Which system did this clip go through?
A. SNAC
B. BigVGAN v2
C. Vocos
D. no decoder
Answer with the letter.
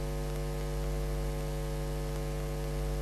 D